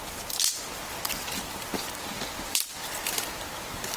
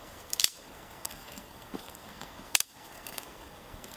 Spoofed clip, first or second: second